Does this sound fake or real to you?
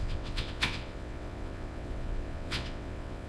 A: fake